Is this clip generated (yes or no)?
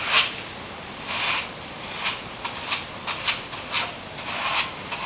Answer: no